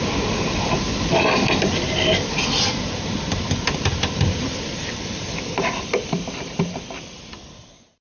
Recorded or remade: recorded